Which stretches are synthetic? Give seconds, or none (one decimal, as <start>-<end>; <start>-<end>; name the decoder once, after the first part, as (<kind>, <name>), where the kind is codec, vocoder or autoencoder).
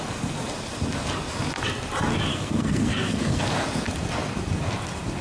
2.3-3.4 (codec, SNAC)